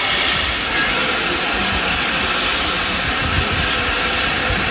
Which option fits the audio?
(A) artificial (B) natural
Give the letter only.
B